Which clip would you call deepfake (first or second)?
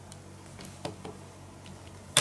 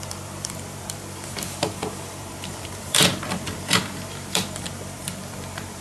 second